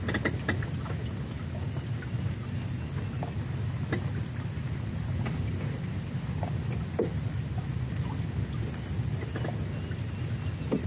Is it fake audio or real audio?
real